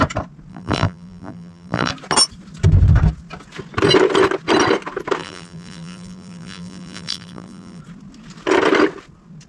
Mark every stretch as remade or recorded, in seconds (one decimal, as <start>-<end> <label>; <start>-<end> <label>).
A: 0.0-0.5 recorded; 0.5-1.9 remade; 1.9-5.2 recorded; 5.2-7.8 remade; 7.8-9.5 recorded